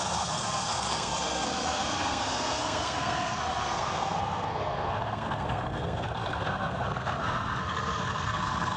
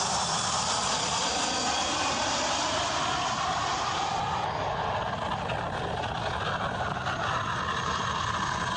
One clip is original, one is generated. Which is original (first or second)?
second